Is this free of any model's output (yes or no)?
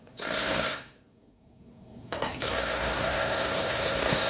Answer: no